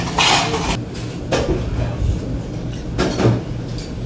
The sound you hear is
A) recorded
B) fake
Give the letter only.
A